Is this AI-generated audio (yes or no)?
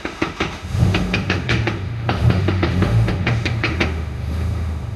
yes